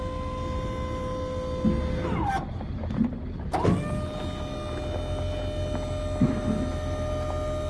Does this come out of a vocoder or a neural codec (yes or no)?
no